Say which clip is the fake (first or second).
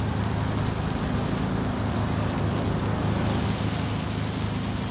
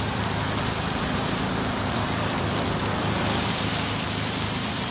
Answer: second